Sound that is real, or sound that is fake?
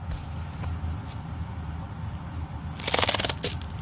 real